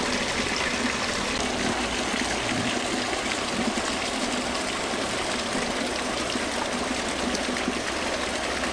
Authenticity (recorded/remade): recorded